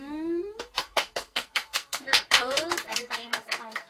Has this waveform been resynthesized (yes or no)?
yes